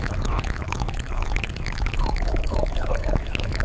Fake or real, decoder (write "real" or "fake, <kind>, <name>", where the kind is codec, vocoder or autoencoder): fake, autoencoder, DAC-VAE